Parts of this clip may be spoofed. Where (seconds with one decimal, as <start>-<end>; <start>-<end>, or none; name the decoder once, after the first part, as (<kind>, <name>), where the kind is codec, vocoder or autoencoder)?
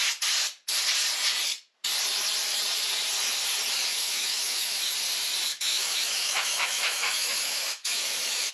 3.9-4.9 (autoencoder, DAC-VAE); 5.5-8.5